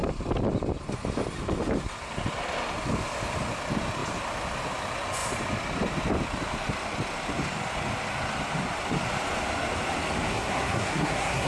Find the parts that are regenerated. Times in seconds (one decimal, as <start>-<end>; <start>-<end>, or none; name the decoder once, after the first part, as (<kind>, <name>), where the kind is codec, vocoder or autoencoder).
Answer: 10.3-11.5 (codec, SNAC)